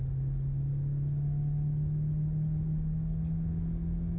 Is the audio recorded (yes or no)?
yes